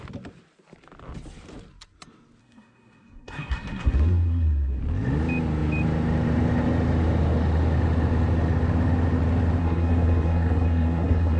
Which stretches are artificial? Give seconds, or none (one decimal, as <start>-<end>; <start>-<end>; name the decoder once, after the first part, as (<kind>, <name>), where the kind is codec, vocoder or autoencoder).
2.4-4.8 (codec, SNAC); 9.6-11.4